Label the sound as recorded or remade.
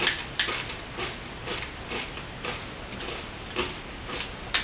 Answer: recorded